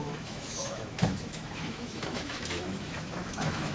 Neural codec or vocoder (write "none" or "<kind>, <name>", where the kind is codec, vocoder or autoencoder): autoencoder, DAC-VAE